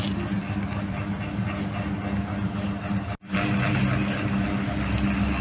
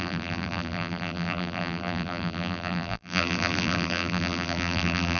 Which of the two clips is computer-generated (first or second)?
second